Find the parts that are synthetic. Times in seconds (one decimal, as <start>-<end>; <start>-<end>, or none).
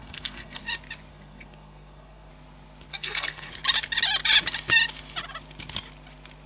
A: 0.0-0.6; 1.1-2.3; 2.9-3.5